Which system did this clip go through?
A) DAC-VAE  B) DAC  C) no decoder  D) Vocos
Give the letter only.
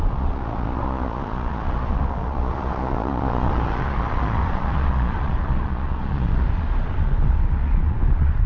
D